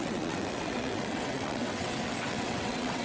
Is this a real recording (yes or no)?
no